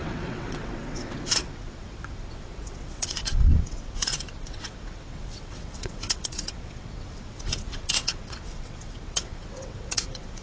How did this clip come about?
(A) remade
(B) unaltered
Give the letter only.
A